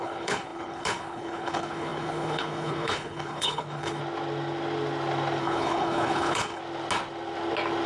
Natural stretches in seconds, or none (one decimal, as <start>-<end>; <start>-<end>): 4.0-5.4; 6.6-7.9